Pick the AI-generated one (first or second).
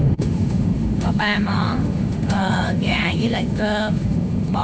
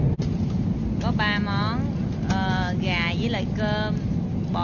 first